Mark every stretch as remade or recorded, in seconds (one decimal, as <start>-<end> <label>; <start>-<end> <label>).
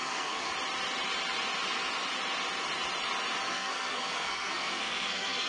0.0-0.5 remade; 0.5-3.5 recorded; 3.5-5.5 remade